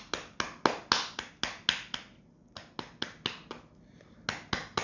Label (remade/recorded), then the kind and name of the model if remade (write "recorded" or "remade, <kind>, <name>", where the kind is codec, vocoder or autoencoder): recorded